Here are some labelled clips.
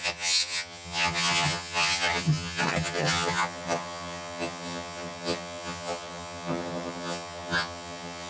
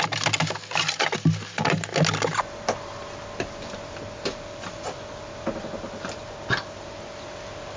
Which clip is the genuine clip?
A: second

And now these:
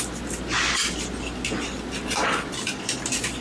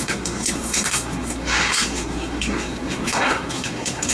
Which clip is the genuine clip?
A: first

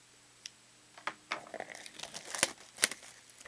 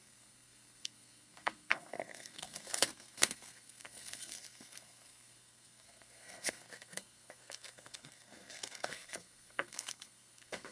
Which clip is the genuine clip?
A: first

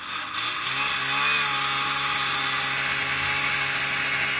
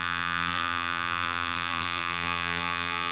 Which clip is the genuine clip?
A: first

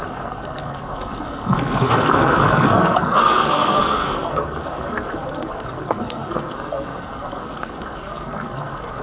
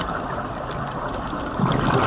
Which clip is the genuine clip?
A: second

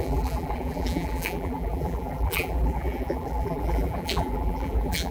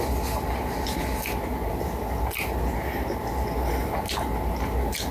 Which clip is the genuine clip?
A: second